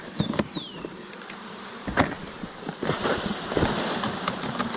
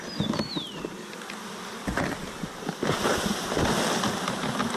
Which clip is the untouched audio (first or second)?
second